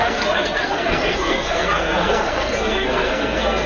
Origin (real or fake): fake